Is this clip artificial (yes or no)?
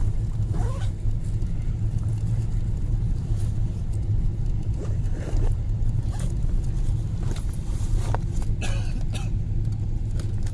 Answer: no